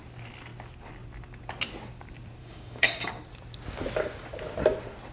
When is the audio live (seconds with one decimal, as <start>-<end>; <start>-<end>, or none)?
0.0-2.4; 3.1-5.1

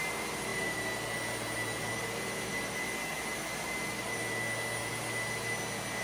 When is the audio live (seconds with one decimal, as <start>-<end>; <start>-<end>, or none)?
0.0-6.0